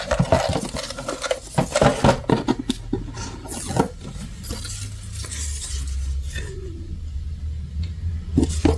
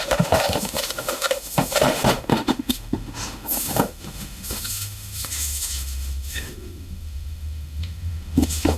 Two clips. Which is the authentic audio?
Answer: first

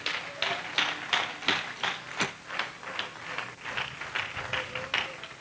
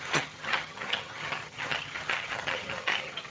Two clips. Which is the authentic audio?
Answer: first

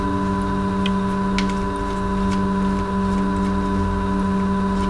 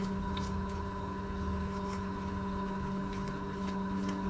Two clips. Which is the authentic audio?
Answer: first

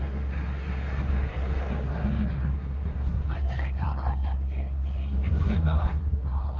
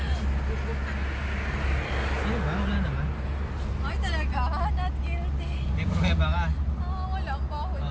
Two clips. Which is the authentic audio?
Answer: second